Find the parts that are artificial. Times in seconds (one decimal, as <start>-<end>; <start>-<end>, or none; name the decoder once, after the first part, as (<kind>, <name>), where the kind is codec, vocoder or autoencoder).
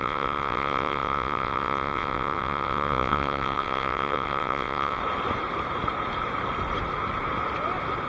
0.0-5.0 (vocoder, WaveNeXt)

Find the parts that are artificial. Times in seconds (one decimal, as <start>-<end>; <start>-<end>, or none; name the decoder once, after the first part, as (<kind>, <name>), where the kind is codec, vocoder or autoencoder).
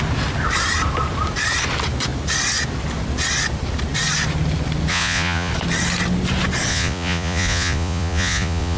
4.9-5.5 (vocoder, Vocos); 6.7-8.8